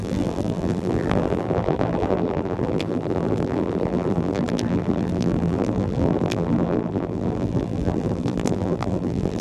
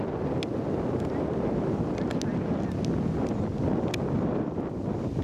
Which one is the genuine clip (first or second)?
second